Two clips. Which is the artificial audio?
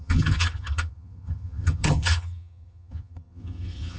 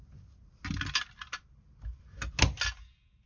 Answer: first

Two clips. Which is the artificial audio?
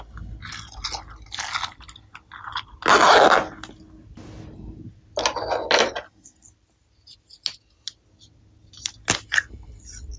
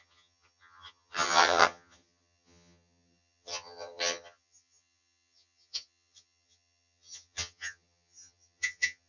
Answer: second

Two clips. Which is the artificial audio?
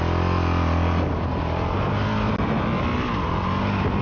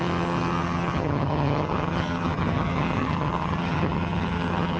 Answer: second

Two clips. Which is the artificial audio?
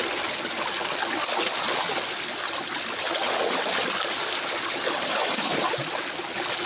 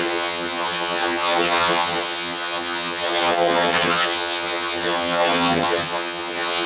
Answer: second